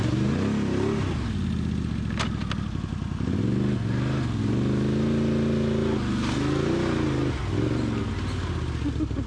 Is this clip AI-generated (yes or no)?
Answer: no